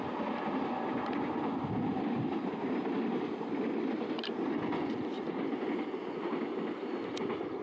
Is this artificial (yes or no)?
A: no